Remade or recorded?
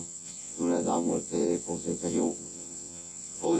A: remade